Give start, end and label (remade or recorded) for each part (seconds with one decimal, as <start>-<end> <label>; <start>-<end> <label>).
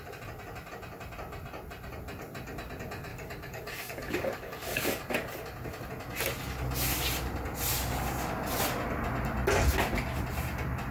0.0-3.1 recorded; 3.1-5.0 remade; 5.0-10.9 recorded